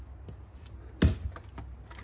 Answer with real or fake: real